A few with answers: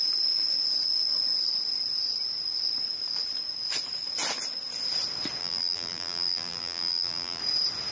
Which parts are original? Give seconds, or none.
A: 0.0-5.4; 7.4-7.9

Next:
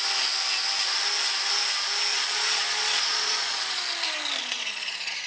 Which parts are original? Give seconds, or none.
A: 0.0-2.1; 3.8-4.4

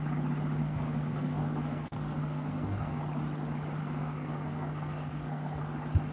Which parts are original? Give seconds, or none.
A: 0.0-0.6; 3.0-3.8; 5.6-6.1

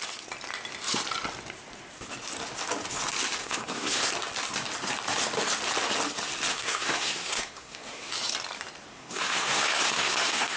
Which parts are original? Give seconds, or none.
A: 0.0-3.4; 4.1-6.5; 8.1-8.9

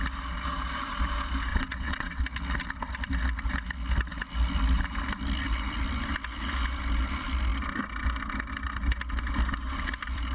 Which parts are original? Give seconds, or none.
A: 0.0-1.5; 2.2-10.3

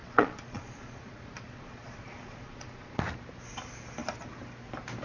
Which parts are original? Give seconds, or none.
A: 3.0-5.0

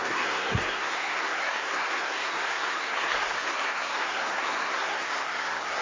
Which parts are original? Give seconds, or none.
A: none

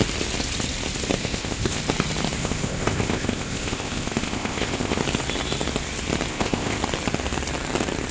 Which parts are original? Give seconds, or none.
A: 0.0-1.2; 1.8-2.4; 5.0-6.3; 6.8-8.1